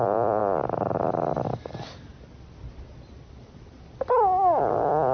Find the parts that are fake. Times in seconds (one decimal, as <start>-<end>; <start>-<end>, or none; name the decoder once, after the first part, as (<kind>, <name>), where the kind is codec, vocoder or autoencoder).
0.0-2.1 (vocoder, BigVGAN v2); 4.6-5.1